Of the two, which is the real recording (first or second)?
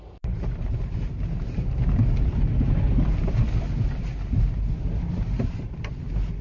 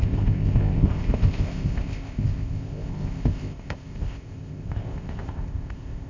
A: first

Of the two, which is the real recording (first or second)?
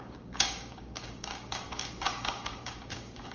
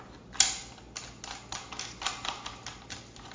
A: second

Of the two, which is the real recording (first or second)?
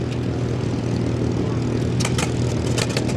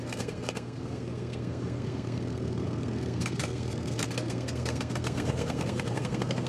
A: first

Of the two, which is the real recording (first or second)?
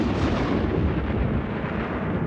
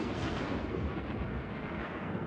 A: first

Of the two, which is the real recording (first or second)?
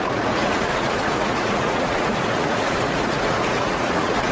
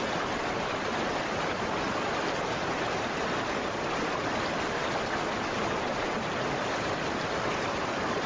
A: second